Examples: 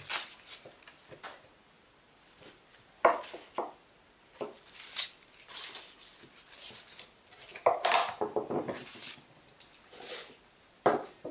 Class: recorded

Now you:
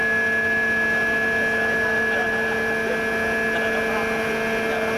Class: recorded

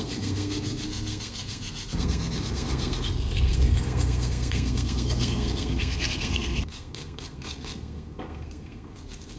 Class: remade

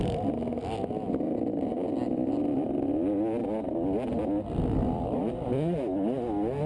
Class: recorded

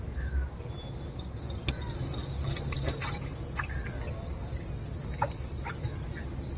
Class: recorded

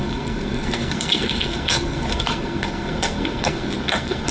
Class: remade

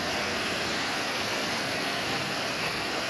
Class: remade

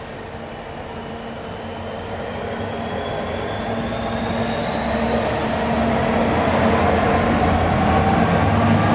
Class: recorded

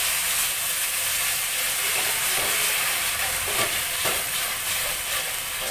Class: recorded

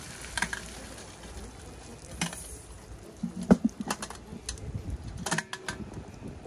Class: recorded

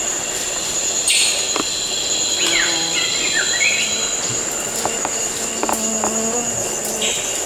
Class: recorded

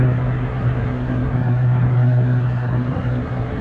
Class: remade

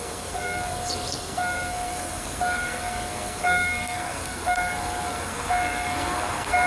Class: remade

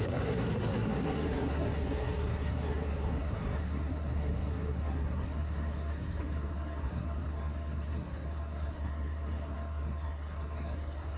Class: remade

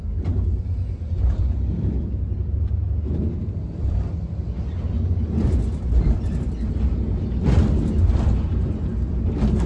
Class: recorded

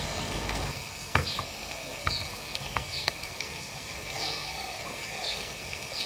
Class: remade